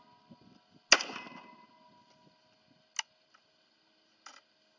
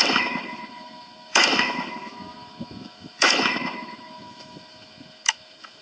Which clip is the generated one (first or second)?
second